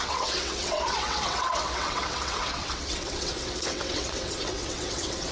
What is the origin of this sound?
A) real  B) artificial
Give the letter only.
B